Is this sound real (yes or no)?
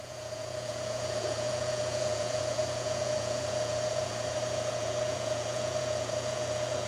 no